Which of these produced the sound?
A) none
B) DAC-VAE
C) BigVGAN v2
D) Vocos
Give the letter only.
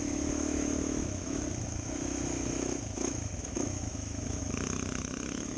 B